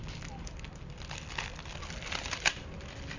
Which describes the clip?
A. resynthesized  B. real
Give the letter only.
B